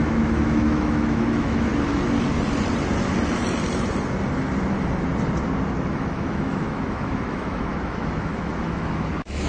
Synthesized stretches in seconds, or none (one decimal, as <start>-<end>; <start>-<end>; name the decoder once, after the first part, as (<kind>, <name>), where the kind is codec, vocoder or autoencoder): 0.0-1.7 (autoencoder, DAC-VAE); 5.9-9.5